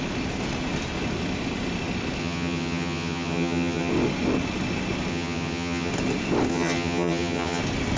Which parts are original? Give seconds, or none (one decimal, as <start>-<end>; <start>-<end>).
0.0-2.2; 3.9-5.1; 5.9-6.5; 7.6-8.0

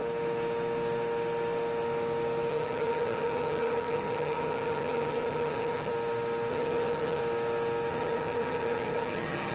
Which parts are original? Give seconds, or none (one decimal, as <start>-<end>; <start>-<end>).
0.0-2.5; 5.9-6.5; 7.2-7.9

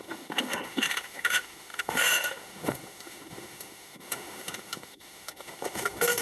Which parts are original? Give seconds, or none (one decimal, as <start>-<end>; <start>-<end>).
none

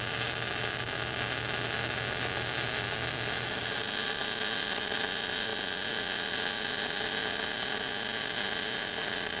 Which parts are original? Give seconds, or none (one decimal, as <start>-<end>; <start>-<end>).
0.0-9.4